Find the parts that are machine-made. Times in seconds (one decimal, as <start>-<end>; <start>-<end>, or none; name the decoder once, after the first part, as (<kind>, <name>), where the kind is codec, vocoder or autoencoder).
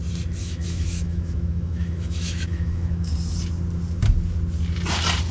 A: 0.4-3.1 (autoencoder, DAC-VAE)